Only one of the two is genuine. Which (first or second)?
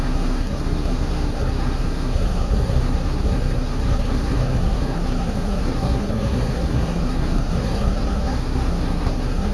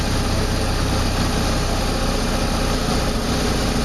second